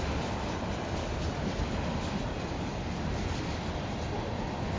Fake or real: real